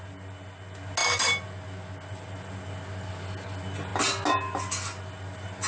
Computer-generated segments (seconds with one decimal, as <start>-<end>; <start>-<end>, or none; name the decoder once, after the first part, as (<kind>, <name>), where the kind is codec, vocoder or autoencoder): none

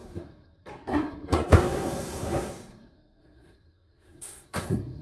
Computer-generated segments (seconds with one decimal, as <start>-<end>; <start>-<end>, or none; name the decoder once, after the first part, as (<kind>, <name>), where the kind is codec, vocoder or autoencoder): 0.0-5.0 (codec, SNAC)

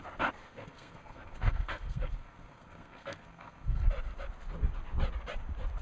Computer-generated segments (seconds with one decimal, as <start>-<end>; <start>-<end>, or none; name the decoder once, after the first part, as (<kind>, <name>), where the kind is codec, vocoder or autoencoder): 0.4-3.9 (codec, SNAC)

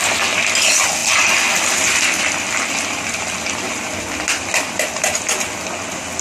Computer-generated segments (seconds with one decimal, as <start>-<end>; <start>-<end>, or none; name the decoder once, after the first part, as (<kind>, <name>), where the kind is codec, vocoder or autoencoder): none

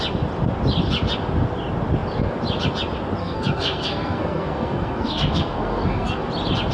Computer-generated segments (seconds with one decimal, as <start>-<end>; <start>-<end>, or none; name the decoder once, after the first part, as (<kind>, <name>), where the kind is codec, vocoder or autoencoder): 3.2-6.3 (codec, SNAC)

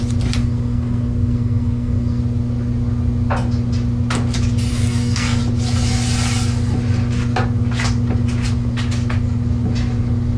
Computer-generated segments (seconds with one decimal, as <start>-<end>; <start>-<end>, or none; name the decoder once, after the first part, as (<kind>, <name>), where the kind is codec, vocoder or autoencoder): 0.4-2.2 (codec, SNAC); 4.7-5.4